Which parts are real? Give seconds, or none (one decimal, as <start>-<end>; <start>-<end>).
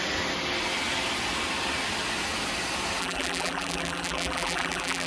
0.0-3.0